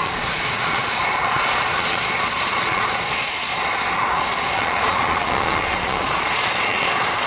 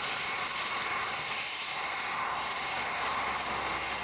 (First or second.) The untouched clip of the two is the second